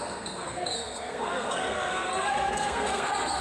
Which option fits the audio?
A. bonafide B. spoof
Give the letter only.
B